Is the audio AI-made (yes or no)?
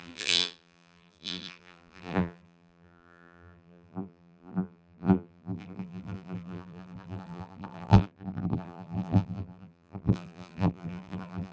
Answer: yes